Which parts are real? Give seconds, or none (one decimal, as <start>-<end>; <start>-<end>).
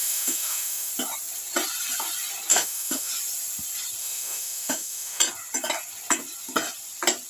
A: 0.9-2.5; 3.1-4.0; 5.2-7.3